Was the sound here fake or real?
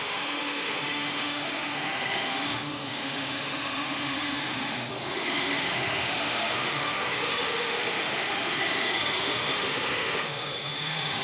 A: fake